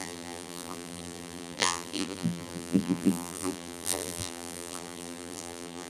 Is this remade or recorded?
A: remade